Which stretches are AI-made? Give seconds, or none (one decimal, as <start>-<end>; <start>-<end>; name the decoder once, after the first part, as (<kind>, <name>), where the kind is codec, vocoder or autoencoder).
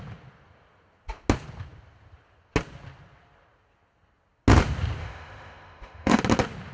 5.0-6.2 (autoencoder, DAC-VAE)